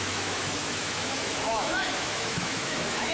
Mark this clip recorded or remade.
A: remade